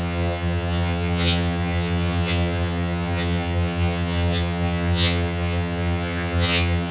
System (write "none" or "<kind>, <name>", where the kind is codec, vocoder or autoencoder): vocoder, HiFi-GAN